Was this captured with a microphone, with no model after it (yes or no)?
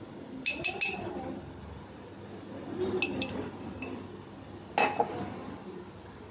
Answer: yes